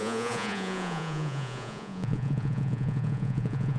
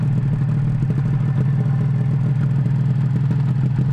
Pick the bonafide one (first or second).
second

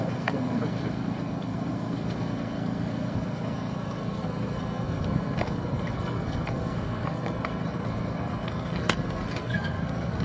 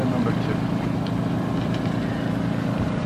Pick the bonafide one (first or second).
second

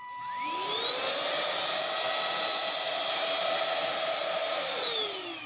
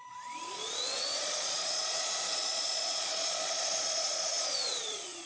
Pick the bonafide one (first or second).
first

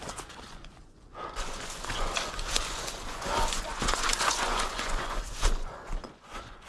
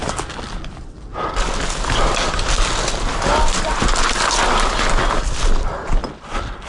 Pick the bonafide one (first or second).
second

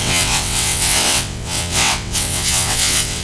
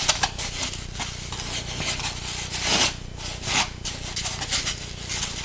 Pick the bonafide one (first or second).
second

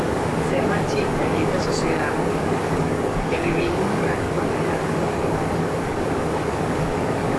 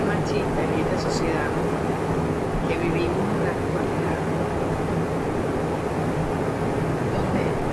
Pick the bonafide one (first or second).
second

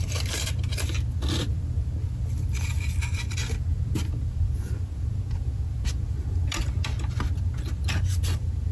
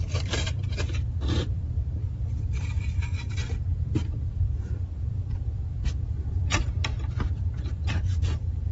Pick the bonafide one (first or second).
first